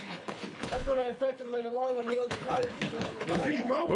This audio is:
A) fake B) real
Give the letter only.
A